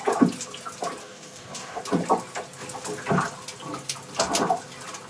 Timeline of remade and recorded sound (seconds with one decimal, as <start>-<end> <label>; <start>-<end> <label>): 0.0-1.0 recorded; 1.0-1.8 remade; 1.8-5.1 recorded